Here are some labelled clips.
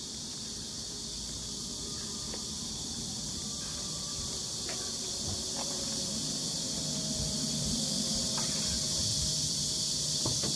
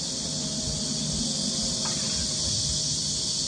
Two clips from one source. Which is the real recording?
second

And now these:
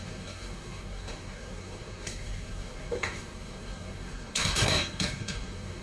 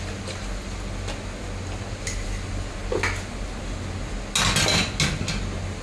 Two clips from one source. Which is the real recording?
second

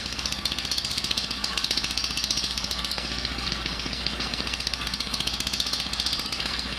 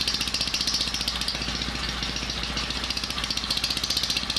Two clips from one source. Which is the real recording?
second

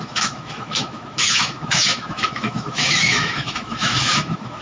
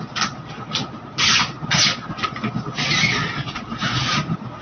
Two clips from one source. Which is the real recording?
second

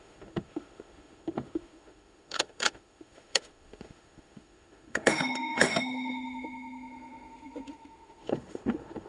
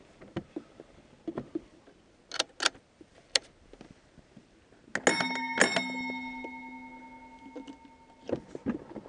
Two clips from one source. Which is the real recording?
second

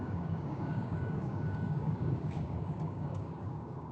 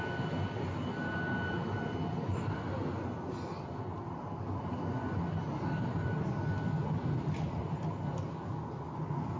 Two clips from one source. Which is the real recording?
second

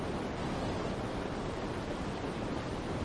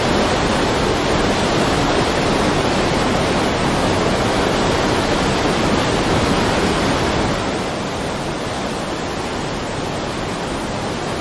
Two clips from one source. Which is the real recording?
second